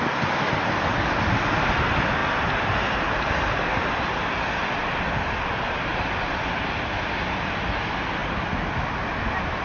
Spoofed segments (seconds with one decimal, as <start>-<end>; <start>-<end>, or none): none